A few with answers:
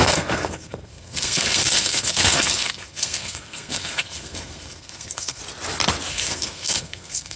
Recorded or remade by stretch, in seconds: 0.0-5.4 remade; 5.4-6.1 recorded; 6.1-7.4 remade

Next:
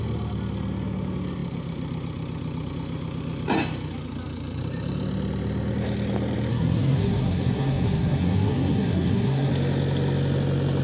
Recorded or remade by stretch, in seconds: 0.0-6.5 recorded; 6.5-9.5 remade; 9.5-10.8 recorded

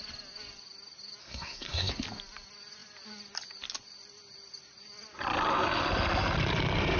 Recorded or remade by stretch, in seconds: 0.0-1.2 recorded; 1.2-1.9 remade; 1.9-7.0 recorded

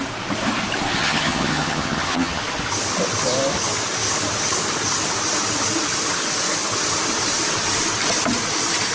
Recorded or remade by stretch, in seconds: 0.0-1.0 recorded; 1.0-2.4 remade; 2.4-8.9 recorded

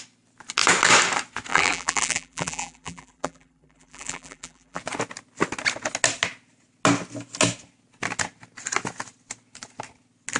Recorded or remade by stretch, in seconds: 0.0-1.5 recorded; 1.5-4.8 remade; 4.8-10.4 recorded

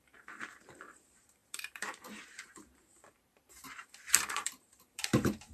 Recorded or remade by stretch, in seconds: 0.0-5.5 remade